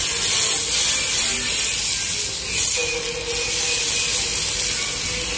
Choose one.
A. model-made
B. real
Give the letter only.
B